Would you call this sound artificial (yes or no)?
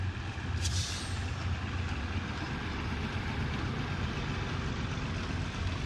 no